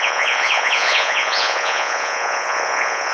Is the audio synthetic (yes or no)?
yes